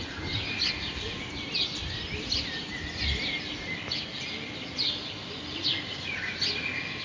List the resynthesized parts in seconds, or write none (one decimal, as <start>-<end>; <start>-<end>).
none